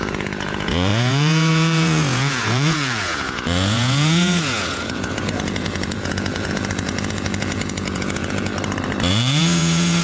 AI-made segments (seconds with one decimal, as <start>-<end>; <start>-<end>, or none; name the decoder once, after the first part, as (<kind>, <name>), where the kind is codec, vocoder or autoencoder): 0.0-8.5 (vocoder, Vocos); 9.1-10.0